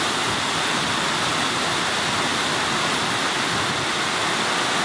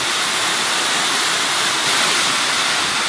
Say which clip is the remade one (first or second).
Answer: second